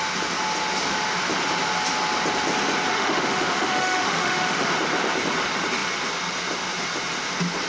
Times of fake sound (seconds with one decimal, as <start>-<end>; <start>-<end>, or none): 2.9-4.7

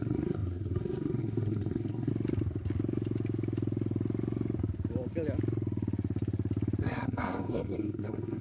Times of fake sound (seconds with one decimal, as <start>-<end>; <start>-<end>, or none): 0.0-2.1; 6.8-8.4

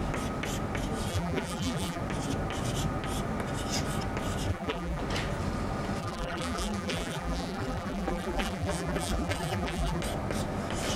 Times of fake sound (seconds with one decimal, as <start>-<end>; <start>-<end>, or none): 1.1-2.0; 4.5-5.0; 6.0-10.0

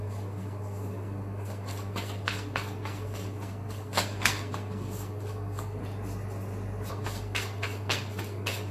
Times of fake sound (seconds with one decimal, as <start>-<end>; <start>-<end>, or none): 0.0-5.8; 6.9-8.7

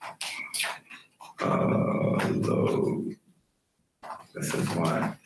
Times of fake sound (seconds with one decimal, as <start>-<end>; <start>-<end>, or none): none

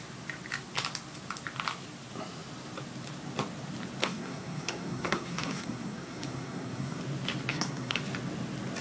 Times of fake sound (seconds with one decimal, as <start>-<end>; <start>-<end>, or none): 4.0-7.0; 7.5-8.0